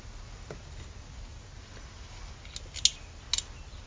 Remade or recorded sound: recorded